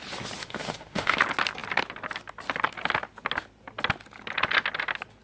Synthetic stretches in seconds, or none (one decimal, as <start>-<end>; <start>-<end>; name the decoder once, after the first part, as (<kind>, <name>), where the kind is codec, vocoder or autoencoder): 0.4-1.2 (autoencoder, DAC-VAE)